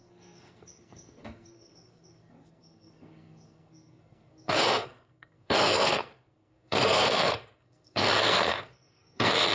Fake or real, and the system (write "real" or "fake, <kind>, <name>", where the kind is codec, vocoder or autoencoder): fake, codec, SNAC